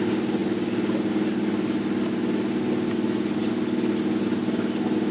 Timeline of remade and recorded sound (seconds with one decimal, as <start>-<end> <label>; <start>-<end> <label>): 0.0-5.1 recorded